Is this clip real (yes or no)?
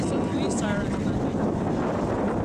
yes